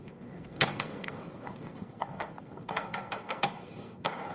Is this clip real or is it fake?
fake